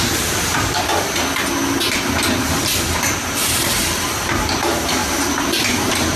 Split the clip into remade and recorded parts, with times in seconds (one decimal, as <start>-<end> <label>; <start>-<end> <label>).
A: 0.0-0.9 remade; 0.9-4.6 recorded; 4.6-6.2 remade